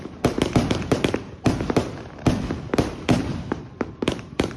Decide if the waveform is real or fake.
fake